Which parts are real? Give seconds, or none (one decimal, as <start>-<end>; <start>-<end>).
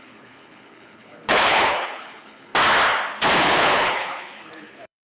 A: 2.5-3.4